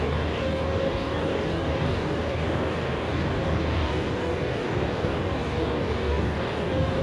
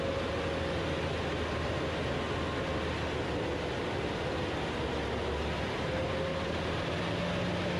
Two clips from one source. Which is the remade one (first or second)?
first